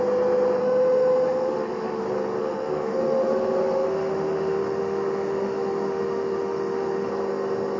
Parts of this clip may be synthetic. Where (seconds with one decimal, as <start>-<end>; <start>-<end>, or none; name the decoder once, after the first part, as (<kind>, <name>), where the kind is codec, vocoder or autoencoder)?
0.6-2.0 (autoencoder, DAC-VAE); 2.4-7.1